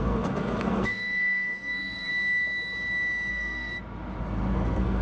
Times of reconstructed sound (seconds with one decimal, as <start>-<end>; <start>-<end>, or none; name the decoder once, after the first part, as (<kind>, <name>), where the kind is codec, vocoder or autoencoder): 0.0-2.1 (codec, SNAC); 3.3-3.7; 4.2-5.0